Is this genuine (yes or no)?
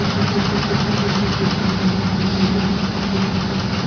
yes